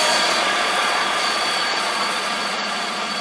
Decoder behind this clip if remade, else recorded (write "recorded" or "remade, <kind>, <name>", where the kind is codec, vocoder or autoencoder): remade, vocoder, Vocos